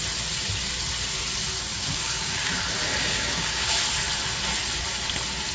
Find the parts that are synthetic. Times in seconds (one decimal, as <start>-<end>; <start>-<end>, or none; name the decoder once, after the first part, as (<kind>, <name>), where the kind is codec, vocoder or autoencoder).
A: 1.7-2.5 (codec, DAC); 3.0-3.7